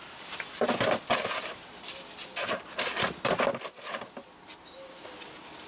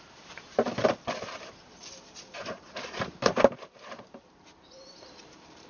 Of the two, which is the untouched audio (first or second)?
first